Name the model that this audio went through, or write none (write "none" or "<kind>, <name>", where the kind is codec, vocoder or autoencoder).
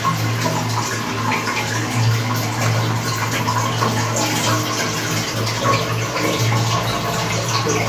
none